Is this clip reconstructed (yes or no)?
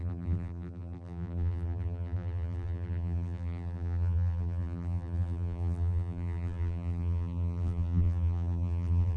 yes